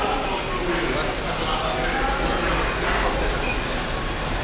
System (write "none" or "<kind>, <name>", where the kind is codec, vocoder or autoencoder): none